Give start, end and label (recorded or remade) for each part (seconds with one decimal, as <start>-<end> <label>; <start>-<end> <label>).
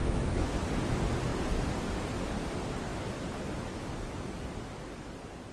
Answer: 0.0-0.5 remade; 0.5-5.5 recorded